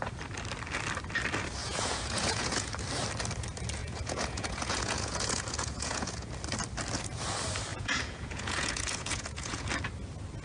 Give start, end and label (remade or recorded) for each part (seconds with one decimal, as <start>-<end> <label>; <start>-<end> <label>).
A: 0.0-1.6 recorded; 1.6-2.7 remade; 2.7-3.8 recorded; 3.8-6.3 remade; 6.3-7.7 recorded; 7.7-9.7 remade; 9.7-10.4 recorded